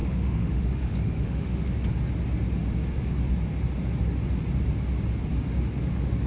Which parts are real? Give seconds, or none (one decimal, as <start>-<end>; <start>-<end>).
1.7-6.3